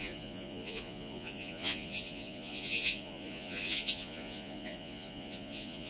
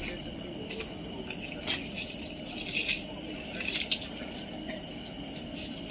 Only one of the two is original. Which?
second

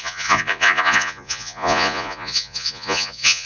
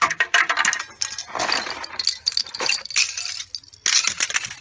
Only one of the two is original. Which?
second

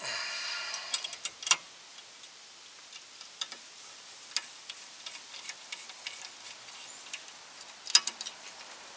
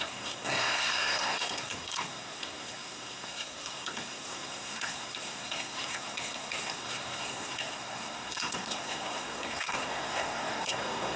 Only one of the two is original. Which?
first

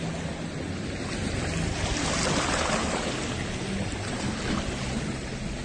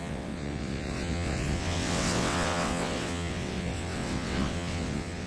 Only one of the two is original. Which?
first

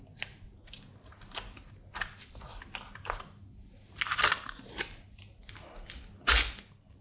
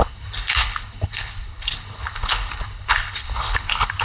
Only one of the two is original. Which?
first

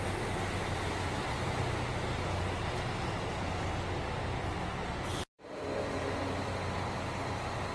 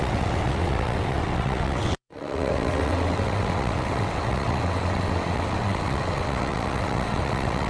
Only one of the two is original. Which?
first